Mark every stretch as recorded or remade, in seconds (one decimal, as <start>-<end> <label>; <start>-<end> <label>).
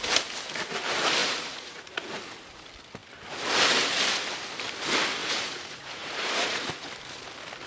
0.0-1.2 recorded; 1.2-2.2 remade; 2.2-5.2 recorded; 5.2-6.9 remade; 6.9-7.7 recorded